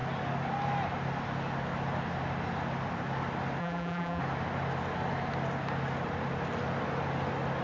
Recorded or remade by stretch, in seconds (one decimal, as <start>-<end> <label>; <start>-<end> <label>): 0.0-3.6 recorded; 3.6-4.2 remade; 4.2-7.6 recorded